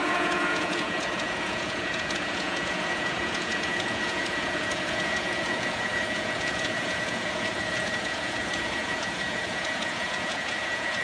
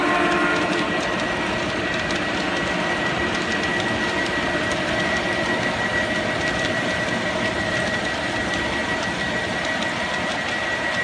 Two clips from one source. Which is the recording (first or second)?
second